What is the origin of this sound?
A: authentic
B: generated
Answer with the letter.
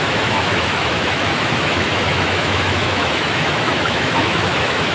B